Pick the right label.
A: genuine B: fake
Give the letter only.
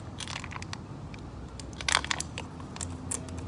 A